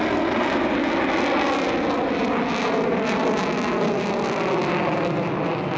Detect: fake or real real